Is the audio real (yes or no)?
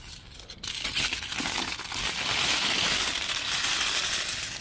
yes